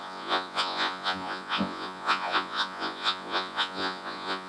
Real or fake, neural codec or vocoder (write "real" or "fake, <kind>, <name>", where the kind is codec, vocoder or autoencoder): fake, vocoder, Vocos